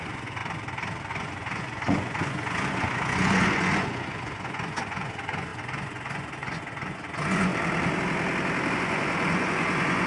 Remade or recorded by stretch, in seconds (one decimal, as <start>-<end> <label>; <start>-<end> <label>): 0.0-0.4 remade; 0.4-1.1 recorded; 1.1-7.5 remade; 7.5-8.7 recorded; 8.7-10.1 remade